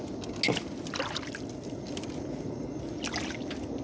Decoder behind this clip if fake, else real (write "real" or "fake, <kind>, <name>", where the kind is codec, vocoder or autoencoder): real